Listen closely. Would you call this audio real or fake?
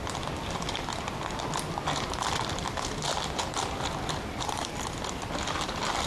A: fake